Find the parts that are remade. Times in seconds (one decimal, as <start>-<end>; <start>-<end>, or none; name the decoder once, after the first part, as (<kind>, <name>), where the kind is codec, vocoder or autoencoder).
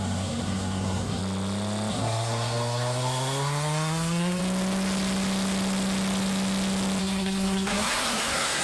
0.0-1.2 (codec, SNAC); 1.9-4.4; 7.0-8.6